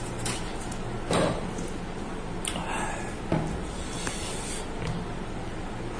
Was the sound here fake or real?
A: real